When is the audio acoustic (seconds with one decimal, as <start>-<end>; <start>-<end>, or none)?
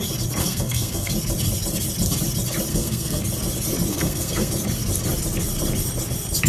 0.0-0.4; 1.1-2.7; 3.2-3.9; 4.5-6.5